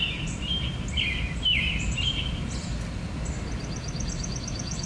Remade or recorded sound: recorded